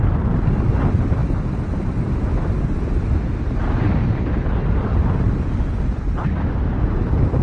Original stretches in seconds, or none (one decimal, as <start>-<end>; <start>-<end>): 0.0-7.4